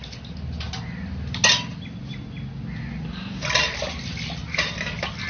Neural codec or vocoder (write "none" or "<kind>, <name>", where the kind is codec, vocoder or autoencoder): none